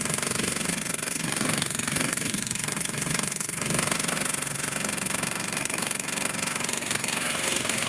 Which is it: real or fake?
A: fake